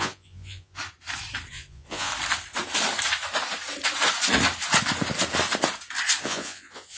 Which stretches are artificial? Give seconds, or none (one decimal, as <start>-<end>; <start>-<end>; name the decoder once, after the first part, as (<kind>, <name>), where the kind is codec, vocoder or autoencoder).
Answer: 0.0-0.8 (vocoder, Vocos); 1.5-2.1; 6.2-7.0